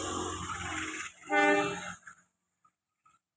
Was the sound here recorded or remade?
recorded